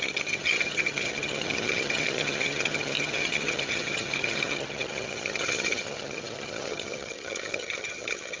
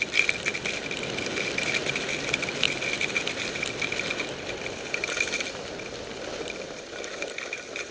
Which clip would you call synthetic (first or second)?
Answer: first